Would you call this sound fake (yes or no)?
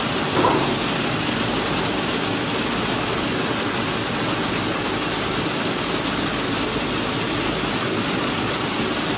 no